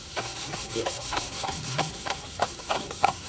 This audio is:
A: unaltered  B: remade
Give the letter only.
B